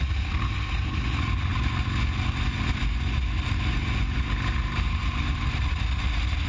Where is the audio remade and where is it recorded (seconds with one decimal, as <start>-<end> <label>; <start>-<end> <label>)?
0.0-6.5 recorded